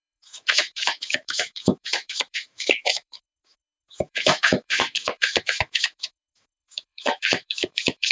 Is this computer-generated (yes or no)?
yes